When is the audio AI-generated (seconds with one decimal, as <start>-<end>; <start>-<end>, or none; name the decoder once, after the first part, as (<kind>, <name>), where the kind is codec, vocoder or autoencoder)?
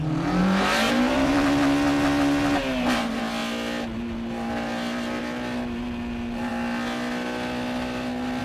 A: 0.4-1.3 (vocoder, BigVGAN v2)